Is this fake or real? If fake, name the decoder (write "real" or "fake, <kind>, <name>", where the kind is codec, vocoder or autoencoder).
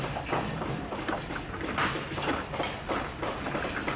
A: real